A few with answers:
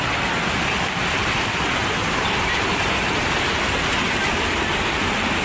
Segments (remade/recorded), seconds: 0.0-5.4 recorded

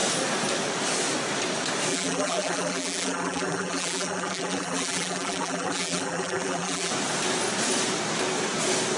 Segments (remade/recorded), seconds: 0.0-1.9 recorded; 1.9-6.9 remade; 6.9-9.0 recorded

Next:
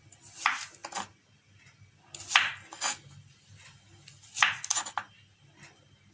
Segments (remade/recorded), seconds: 0.0-6.1 recorded

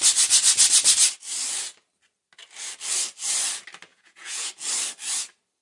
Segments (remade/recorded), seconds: 0.0-3.9 recorded; 3.9-4.5 remade; 4.5-5.6 recorded

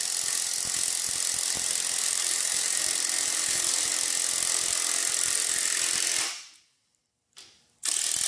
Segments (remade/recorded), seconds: 0.0-2.0 recorded; 2.0-3.9 remade; 3.9-5.0 recorded; 5.0-7.1 remade; 7.1-8.3 recorded

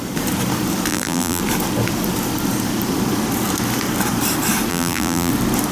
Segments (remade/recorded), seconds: 0.0-0.9 recorded; 0.9-1.4 remade; 1.4-4.7 recorded; 4.7-5.3 remade; 5.3-5.7 recorded